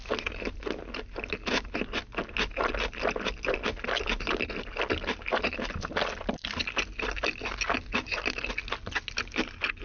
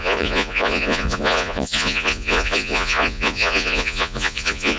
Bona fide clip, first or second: first